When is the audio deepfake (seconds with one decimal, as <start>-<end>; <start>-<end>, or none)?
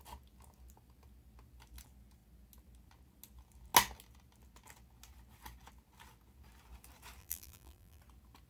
7.2-8.0